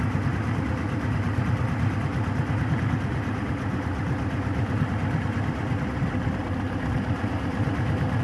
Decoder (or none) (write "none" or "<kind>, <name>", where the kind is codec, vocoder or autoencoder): none